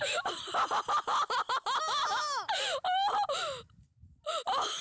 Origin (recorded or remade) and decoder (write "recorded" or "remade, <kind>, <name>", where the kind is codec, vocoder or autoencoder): recorded